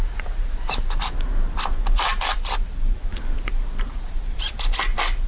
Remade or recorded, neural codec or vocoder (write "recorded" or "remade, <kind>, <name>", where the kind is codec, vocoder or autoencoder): recorded